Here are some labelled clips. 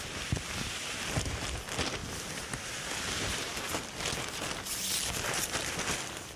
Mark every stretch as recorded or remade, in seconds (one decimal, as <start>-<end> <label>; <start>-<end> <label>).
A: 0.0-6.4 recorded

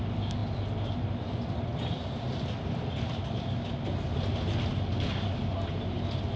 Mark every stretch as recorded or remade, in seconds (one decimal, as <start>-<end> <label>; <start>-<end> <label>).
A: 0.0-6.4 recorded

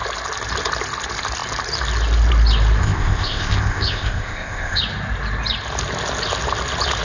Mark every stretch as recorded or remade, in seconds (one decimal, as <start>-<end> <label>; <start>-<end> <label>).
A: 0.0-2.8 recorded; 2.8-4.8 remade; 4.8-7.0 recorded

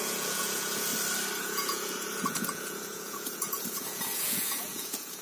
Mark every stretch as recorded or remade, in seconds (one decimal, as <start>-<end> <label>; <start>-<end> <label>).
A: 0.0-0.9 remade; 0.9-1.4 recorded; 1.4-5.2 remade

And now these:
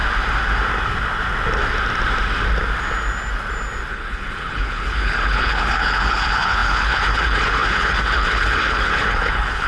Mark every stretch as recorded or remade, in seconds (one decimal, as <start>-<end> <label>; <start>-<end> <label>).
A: 0.0-3.9 recorded; 3.9-9.7 remade

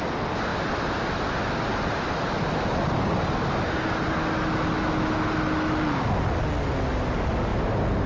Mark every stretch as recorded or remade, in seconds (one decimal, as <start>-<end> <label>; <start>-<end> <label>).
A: 0.0-8.1 recorded